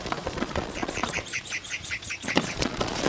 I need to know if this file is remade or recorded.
remade